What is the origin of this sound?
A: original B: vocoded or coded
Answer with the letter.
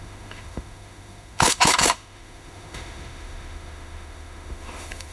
B